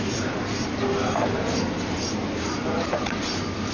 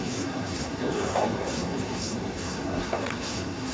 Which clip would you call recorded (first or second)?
first